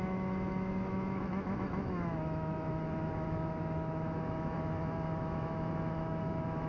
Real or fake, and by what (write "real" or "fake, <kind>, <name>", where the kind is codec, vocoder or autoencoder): fake, autoencoder, DAC-VAE